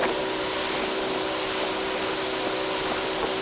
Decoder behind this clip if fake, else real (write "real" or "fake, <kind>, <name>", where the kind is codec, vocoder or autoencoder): real